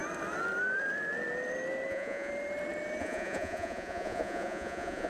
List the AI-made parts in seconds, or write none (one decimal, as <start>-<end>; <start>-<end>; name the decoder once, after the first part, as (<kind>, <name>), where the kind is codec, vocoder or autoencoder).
1.9-2.3 (vocoder, Vocos); 3.0-5.1